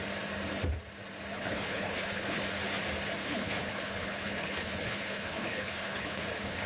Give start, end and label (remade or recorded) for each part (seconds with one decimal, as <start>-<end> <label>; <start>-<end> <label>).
0.0-1.3 recorded; 1.3-2.4 remade; 2.4-3.2 recorded; 3.2-6.7 remade